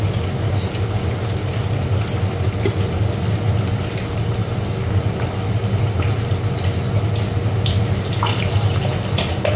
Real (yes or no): yes